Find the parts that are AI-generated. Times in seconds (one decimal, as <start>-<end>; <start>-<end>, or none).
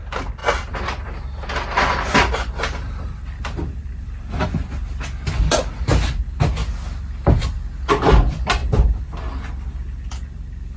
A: 0.4-5.0; 8.6-10.1